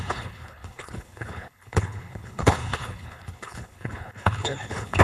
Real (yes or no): no